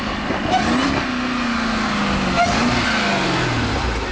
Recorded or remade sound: recorded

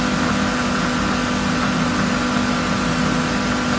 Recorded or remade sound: recorded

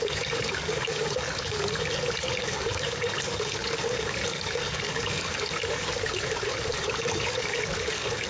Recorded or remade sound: remade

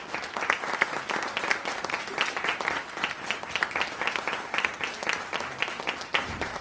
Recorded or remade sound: recorded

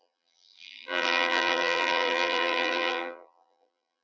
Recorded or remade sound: remade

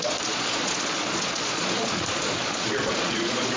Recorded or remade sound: remade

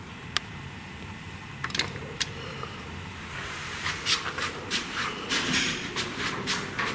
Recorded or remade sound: remade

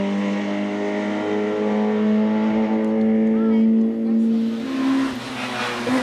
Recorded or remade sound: recorded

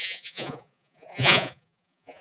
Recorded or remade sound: remade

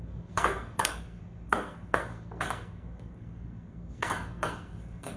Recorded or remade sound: remade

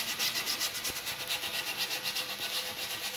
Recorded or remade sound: recorded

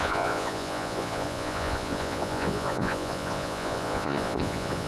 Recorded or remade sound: remade